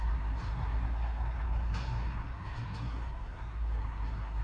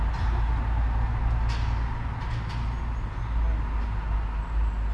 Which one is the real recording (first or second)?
second